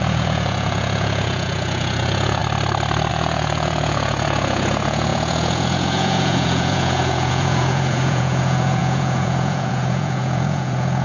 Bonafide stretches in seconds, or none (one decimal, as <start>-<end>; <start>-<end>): 2.4-3.1